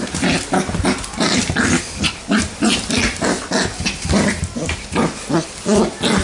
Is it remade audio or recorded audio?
remade